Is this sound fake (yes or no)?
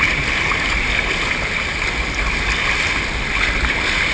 no